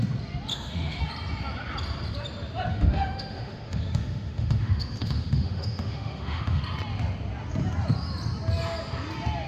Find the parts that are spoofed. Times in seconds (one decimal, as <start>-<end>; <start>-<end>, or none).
0.5-1.0; 2.7-6.6